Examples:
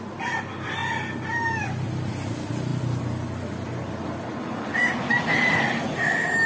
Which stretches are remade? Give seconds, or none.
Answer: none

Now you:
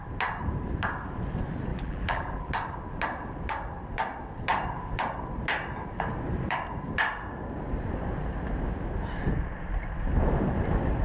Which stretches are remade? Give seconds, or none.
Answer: 1.7-2.5

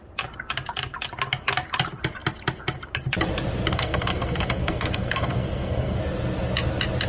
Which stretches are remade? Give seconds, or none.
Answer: 3.7-6.0